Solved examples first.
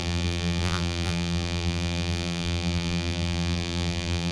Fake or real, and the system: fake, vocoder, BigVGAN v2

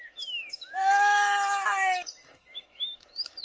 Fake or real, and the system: fake, autoencoder, DAC-VAE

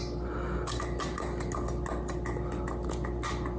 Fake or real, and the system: real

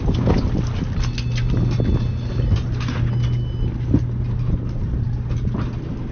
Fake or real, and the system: real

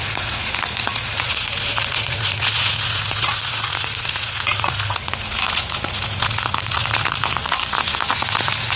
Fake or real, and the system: fake, vocoder, Vocos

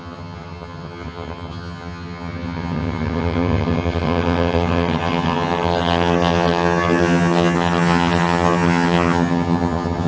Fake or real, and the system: fake, vocoder, HiFi-GAN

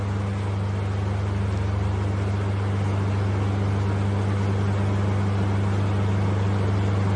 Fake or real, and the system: real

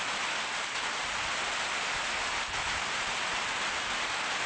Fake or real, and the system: real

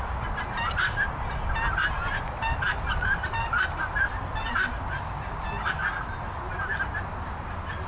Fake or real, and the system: real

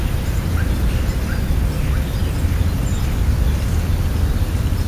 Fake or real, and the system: real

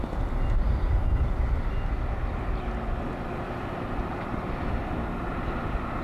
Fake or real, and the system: real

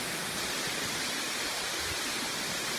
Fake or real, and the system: real